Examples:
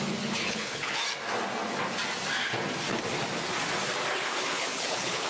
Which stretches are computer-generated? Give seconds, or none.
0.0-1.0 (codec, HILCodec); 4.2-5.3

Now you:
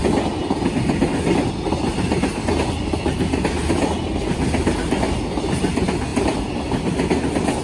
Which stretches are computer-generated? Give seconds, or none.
none

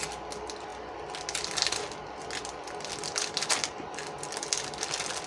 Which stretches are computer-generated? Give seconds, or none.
none